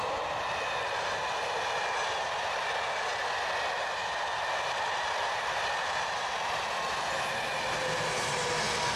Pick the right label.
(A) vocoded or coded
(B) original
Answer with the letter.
B